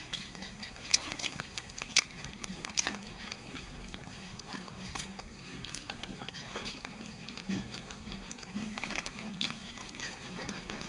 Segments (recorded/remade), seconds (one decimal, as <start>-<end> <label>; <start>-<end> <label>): 0.0-10.9 remade